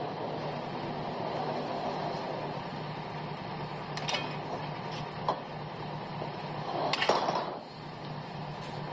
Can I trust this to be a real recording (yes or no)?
yes